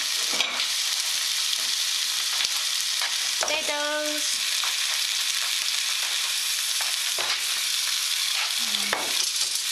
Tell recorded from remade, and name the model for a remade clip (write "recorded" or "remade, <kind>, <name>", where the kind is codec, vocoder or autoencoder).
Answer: recorded